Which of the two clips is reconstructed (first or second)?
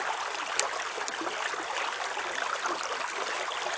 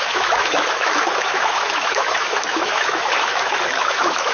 second